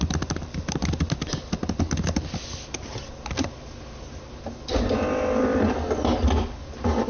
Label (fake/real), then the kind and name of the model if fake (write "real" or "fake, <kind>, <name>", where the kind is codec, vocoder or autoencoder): real